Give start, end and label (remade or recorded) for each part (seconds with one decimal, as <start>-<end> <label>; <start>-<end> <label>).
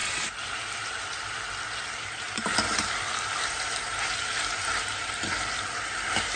0.0-6.4 recorded